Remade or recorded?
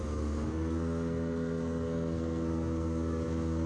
remade